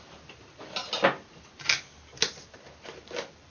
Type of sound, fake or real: real